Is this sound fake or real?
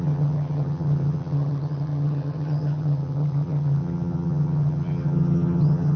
fake